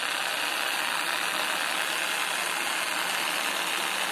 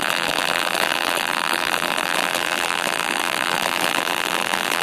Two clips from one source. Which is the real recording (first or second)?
first